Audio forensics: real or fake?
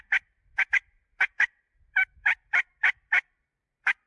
fake